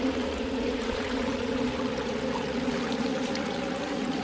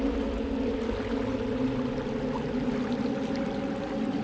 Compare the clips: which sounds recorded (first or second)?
second